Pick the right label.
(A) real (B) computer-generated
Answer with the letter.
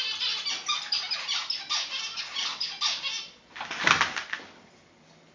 A